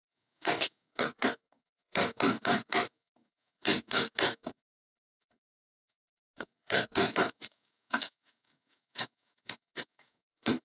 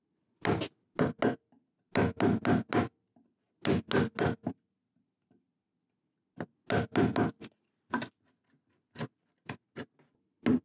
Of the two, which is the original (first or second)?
second